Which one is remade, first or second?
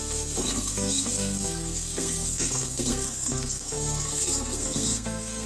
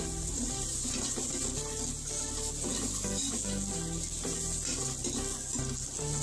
first